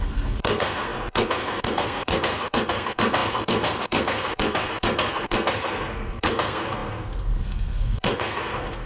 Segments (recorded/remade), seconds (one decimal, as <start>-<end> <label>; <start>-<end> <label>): 0.0-8.9 remade